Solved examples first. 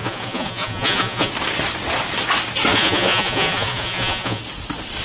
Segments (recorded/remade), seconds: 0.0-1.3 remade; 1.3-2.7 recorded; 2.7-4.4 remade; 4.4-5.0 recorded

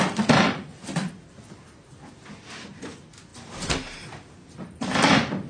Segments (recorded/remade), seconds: 0.0-5.5 recorded

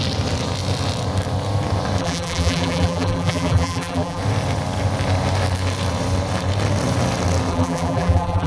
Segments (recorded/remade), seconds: 0.0-2.0 recorded; 2.0-4.2 remade; 4.2-7.5 recorded; 7.5-8.5 remade

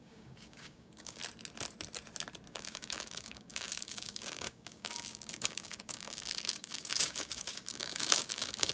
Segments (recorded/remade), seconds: 0.0-1.2 remade; 1.2-2.5 recorded; 2.5-8.7 remade

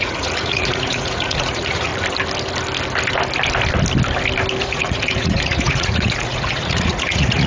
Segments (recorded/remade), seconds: 0.0-1.9 remade; 1.9-4.6 recorded; 4.6-7.5 remade

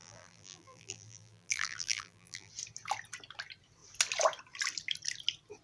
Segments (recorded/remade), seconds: 0.0-2.5 remade; 2.5-5.6 recorded